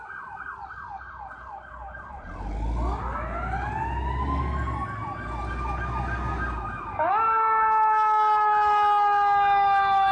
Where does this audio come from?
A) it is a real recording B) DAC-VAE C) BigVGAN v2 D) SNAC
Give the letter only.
A